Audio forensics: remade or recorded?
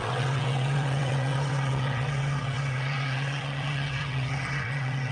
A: remade